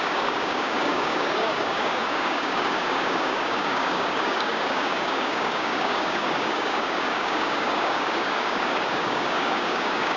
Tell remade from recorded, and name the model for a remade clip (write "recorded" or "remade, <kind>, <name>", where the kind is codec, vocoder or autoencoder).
remade, codec, DAC